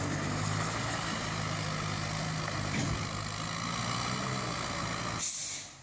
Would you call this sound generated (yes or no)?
no